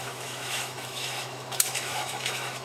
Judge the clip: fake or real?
fake